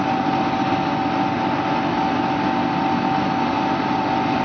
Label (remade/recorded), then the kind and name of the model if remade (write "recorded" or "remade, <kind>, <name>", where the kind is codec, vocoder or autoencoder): recorded